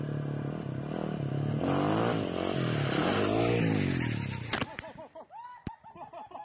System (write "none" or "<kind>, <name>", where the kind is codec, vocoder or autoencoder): none